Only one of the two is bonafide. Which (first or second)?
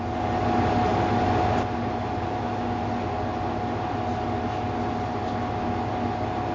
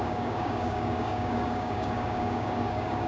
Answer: first